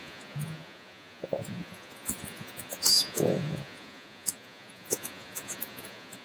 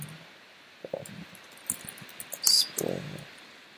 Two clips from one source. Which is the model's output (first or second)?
first